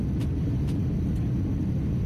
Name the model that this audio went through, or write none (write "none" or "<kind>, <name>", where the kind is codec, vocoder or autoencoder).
none